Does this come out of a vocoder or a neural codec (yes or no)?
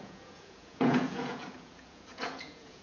yes